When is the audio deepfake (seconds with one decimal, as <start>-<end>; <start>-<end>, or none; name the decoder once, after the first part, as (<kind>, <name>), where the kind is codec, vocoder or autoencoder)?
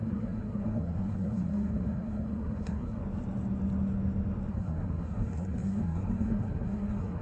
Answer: 0.0-3.0 (codec, SNAC); 4.5-7.2